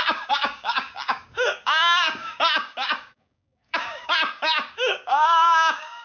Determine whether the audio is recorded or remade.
remade